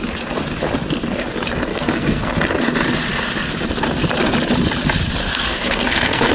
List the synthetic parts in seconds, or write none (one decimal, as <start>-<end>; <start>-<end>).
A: 1.7-2.3; 5.2-6.3